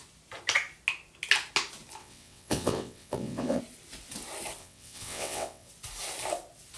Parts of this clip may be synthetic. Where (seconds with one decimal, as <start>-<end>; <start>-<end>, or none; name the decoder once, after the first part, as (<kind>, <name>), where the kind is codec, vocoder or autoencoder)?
2.0-3.6 (vocoder, WaveNeXt); 4.6-5.7